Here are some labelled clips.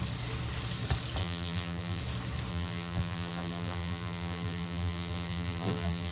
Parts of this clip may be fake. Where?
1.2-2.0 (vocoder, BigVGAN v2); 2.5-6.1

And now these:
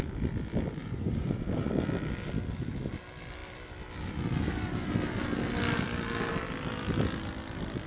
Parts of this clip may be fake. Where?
0.8-1.7 (vocoder, BigVGAN v2)